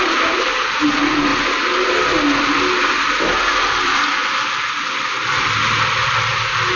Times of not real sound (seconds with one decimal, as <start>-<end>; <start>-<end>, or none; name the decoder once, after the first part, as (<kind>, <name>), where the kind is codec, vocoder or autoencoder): 0.0-6.8 (vocoder, BigVGAN v2)